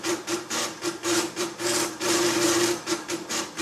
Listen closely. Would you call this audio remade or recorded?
remade